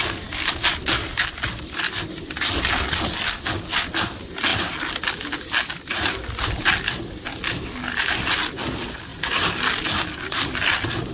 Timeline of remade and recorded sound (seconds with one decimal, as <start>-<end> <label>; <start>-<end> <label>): 0.0-11.1 recorded